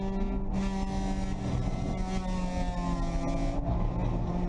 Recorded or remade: recorded